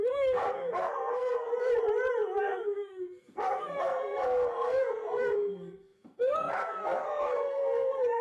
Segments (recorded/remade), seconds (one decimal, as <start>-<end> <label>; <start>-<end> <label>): 0.0-1.5 remade; 1.5-2.4 recorded; 2.4-8.2 remade